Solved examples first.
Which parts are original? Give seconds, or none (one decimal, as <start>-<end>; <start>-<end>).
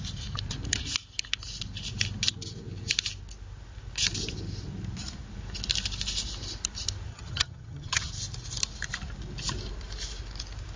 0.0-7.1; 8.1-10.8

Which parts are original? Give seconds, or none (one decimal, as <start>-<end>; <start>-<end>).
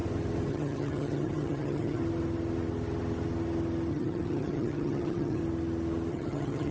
0.0-0.5; 2.0-3.9; 5.4-6.1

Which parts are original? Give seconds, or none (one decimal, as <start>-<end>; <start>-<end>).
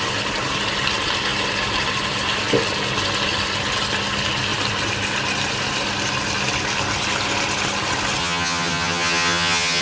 0.0-8.2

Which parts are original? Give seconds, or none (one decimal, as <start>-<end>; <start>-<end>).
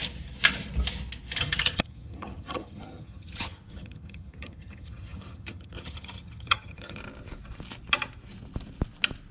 0.0-1.4; 7.0-9.3